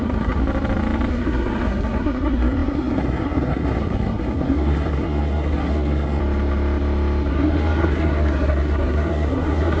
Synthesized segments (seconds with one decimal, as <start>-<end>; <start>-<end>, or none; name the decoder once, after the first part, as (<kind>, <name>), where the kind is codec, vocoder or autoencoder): 0.0-0.4 (codec, SNAC); 1.1-6.2; 7.3-9.8